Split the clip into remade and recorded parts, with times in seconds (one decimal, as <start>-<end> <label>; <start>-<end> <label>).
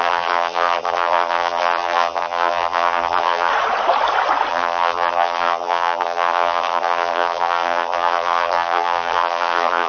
0.0-3.5 remade; 3.5-4.5 recorded; 4.5-9.9 remade